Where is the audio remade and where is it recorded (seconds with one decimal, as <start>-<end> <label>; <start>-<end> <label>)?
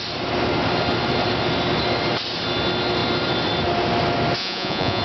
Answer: 0.0-4.4 recorded; 4.4-5.0 remade